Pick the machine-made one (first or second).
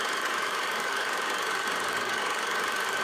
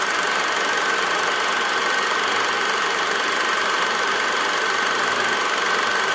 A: first